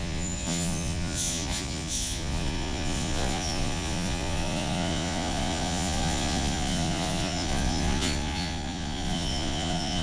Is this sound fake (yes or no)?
yes